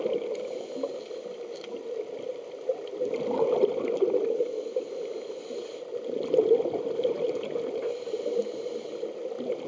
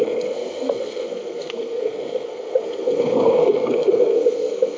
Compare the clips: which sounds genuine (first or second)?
first